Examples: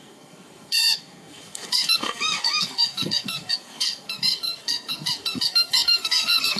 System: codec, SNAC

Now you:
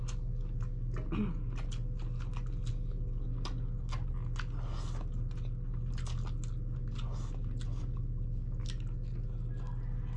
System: none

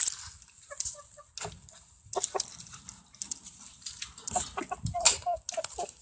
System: none